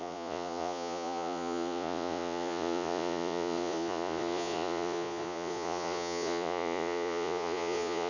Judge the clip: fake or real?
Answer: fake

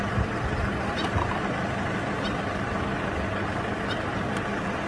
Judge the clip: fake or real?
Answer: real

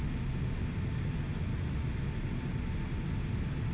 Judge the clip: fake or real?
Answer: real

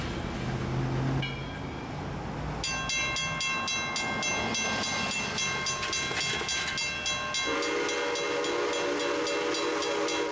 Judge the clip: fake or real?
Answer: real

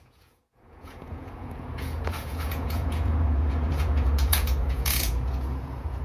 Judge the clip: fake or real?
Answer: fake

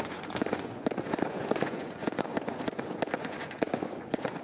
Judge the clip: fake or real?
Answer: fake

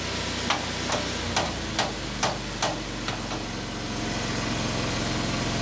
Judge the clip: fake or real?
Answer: real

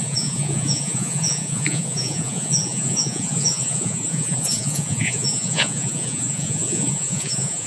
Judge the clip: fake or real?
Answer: fake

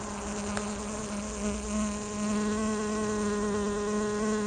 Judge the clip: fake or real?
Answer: real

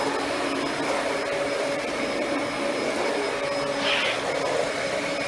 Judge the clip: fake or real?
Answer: real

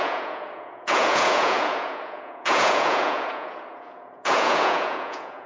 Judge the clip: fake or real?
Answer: fake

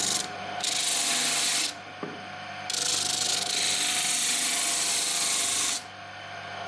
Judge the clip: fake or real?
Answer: real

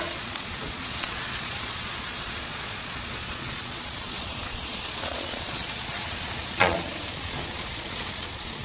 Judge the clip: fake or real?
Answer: fake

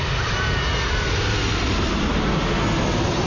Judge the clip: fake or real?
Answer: real